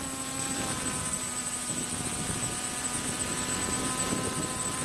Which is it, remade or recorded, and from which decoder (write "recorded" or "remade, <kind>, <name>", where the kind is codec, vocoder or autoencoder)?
remade, vocoder, BigVGAN v2